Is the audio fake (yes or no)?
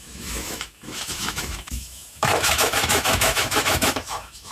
yes